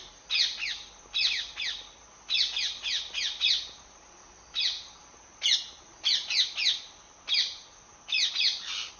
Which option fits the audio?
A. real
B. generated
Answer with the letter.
A